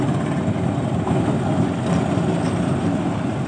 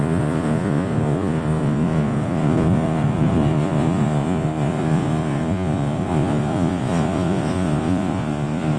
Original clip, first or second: first